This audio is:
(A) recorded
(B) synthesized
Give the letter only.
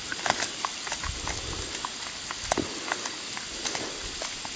A